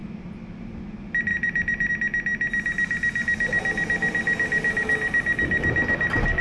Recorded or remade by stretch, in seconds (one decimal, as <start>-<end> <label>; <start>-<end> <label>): 0.0-1.3 recorded; 1.3-1.9 remade; 1.9-6.4 recorded